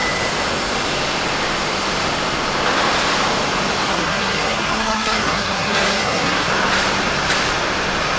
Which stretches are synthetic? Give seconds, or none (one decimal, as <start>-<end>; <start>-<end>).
3.9-6.5